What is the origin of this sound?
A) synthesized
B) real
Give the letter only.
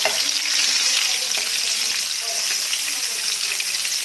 B